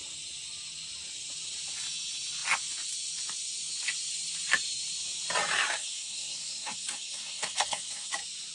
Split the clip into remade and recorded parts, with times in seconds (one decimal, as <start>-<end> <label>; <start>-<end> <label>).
0.0-5.8 recorded; 5.8-8.1 remade; 8.1-8.5 recorded